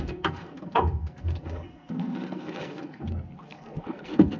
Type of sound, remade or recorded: remade